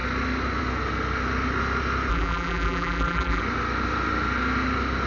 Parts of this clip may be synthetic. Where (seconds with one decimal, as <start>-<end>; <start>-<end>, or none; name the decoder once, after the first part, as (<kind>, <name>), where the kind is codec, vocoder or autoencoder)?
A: 2.1-3.4 (vocoder, BigVGAN v2)